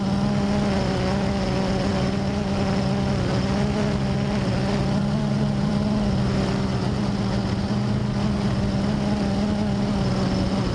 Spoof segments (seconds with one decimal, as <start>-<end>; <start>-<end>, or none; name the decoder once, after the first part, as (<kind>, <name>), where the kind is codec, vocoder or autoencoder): 5.0-5.7 (vocoder, BigVGAN v2)

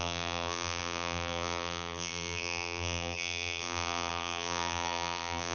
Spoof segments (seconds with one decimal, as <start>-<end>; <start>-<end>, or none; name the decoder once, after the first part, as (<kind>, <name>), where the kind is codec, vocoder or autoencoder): 0.0-5.5 (vocoder, BigVGAN v2)

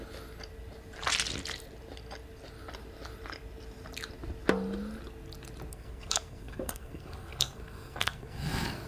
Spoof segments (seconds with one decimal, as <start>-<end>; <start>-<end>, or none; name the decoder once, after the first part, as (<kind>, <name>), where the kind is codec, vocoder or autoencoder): 5.7-8.9 (codec, SNAC)

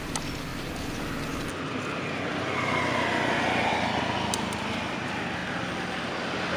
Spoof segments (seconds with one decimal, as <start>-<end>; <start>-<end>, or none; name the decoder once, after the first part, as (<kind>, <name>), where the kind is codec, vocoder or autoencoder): none

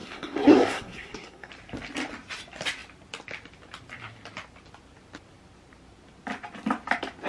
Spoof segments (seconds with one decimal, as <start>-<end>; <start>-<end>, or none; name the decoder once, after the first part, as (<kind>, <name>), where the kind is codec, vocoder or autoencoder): 0.0-1.5 (codec, SNAC)